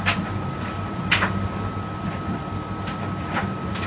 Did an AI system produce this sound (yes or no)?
yes